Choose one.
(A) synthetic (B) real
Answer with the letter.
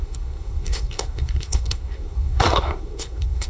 A